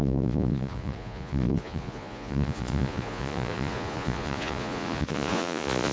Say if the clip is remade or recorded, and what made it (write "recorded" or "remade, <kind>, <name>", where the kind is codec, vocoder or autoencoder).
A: remade, vocoder, Vocos